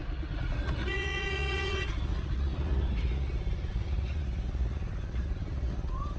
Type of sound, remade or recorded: remade